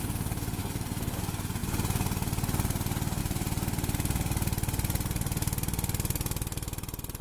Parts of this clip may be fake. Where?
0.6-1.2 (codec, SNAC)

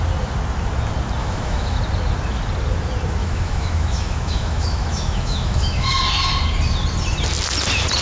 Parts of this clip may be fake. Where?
1.2-1.8 (autoencoder, DAC-VAE); 3.2-6.0

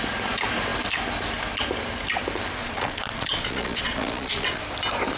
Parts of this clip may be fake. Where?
2.6-4.6 (vocoder, Vocos)

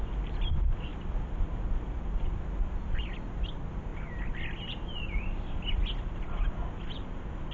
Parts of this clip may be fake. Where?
0.9-3.4 (vocoder, BigVGAN v2)

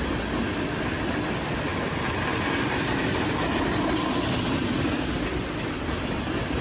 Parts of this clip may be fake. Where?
4.6-5.5 (vocoder, BigVGAN v2)

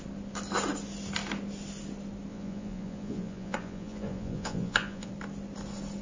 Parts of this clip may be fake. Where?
2.3-5.1 (vocoder, Vocos)

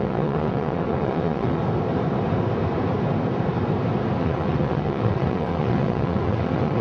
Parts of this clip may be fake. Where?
0.0-1.6 (vocoder, WaveNeXt); 4.2-6.8

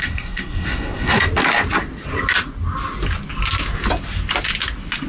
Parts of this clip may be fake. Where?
0.0-1.2 (codec, SNAC)